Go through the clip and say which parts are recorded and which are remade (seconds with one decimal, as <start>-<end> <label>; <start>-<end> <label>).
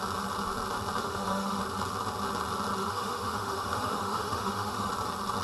0.0-1.0 recorded; 1.0-1.6 remade; 1.6-2.8 recorded; 2.8-4.9 remade; 4.9-5.4 recorded